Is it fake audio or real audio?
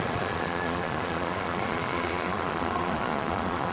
fake